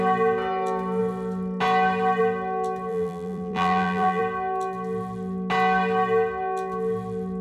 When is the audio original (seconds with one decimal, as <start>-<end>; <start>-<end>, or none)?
0.0-2.9; 4.2-7.4